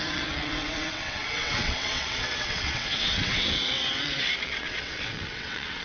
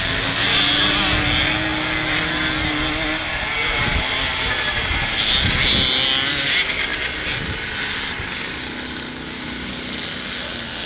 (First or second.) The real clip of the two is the second